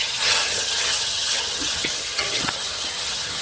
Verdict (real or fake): fake